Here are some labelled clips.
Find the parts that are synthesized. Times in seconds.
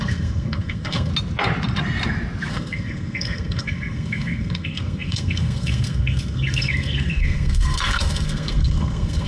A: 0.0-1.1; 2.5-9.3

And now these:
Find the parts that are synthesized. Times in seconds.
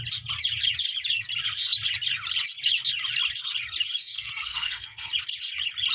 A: 4.0-5.1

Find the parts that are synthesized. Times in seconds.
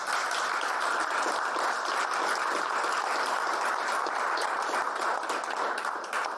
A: none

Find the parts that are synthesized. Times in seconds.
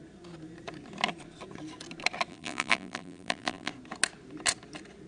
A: 2.3-3.7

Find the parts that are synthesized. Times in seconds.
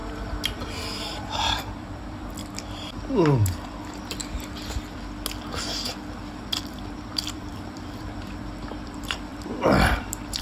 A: 0.0-2.4; 6.2-10.4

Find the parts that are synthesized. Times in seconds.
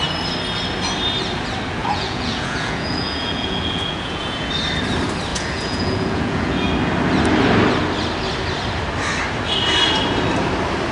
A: 1.8-4.5; 5.3-6.7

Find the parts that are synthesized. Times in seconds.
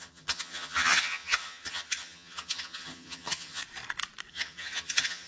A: 0.0-3.6; 4.3-5.3